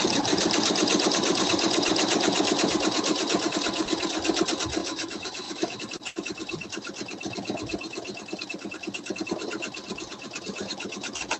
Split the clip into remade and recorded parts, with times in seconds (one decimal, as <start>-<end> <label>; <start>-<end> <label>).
0.0-4.8 recorded; 4.8-5.8 remade; 5.8-11.4 recorded